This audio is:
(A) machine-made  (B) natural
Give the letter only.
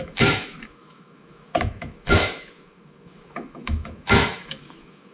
A